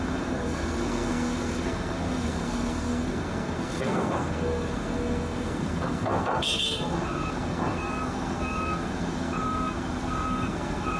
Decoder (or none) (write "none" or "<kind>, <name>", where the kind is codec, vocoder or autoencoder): codec, SNAC